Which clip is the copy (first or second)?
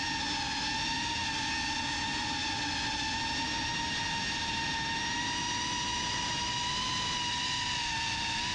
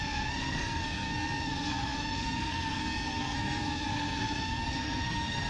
second